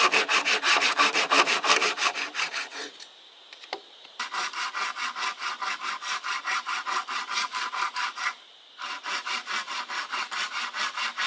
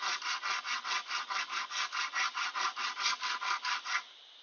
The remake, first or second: first